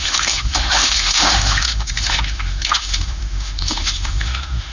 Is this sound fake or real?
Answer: fake